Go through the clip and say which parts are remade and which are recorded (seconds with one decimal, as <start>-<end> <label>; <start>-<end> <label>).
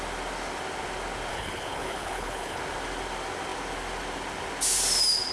0.0-1.3 recorded; 1.3-2.6 remade; 2.6-5.3 recorded